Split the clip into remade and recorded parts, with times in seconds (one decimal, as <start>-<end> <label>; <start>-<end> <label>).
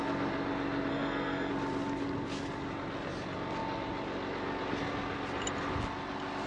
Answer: 0.0-0.9 recorded; 0.9-1.5 remade; 1.5-6.5 recorded